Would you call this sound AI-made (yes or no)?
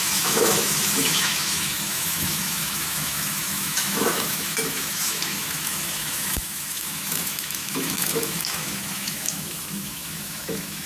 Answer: yes